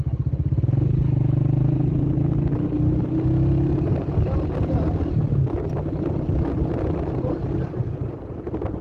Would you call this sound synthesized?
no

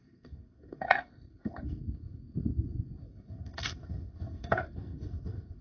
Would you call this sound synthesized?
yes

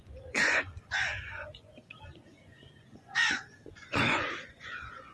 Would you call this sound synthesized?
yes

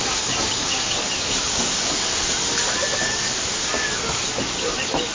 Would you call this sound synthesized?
yes